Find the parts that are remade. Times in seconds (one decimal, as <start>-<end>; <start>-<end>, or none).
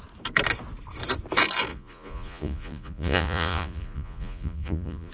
1.7-5.1